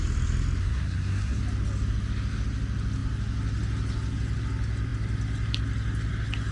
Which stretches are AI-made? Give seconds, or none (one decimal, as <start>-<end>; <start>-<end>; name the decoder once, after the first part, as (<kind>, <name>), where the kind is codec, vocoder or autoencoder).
0.6-1.4 (codec, SNAC)